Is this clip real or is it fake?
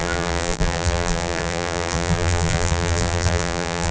fake